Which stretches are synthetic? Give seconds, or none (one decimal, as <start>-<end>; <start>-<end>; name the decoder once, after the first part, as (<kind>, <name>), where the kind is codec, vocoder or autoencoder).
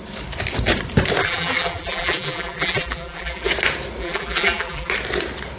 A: 1.2-3.5 (vocoder, BigVGAN v2); 4.0-4.9